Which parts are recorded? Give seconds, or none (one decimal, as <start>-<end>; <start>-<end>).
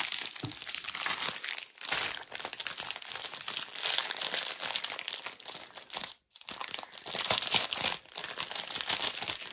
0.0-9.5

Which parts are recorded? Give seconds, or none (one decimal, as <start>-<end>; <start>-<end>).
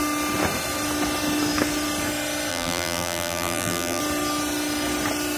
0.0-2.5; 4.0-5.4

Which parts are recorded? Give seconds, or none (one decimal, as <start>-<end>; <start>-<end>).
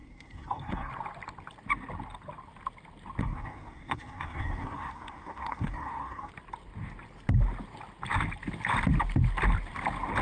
0.9-3.2; 6.3-10.2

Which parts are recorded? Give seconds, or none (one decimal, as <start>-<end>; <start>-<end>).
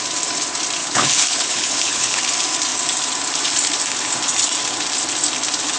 0.0-0.8; 2.2-5.8